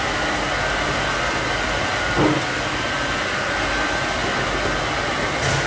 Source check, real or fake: real